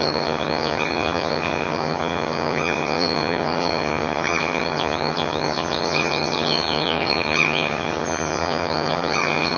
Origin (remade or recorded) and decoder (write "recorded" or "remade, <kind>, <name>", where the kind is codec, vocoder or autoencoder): remade, vocoder, HiFi-GAN